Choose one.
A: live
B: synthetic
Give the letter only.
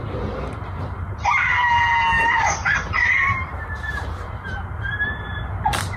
B